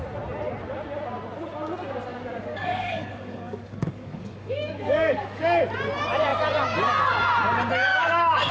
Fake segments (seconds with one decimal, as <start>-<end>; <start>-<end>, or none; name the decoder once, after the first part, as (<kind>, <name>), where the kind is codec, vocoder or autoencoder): 2.1-5.6 (codec, DAC); 7.9-8.5